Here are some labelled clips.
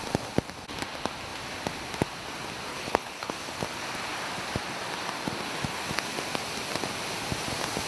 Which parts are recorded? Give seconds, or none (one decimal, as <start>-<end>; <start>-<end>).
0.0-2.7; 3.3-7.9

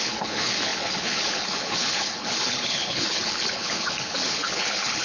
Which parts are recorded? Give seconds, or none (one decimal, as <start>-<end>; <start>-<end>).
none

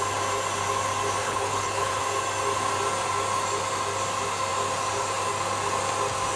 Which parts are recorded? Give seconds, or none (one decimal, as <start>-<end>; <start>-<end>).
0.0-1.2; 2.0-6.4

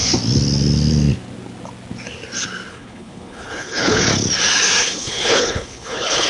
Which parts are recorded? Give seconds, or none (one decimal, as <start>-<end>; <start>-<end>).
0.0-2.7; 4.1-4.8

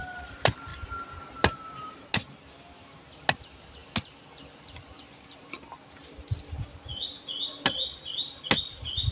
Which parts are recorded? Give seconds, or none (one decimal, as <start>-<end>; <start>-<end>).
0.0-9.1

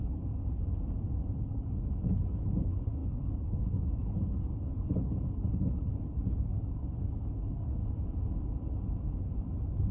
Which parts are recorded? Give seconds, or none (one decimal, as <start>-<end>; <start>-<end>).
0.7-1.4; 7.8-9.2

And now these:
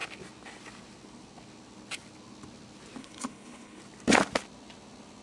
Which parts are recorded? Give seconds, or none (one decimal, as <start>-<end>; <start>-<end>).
0.0-3.0; 3.8-5.2